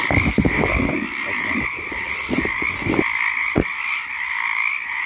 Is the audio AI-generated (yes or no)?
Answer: no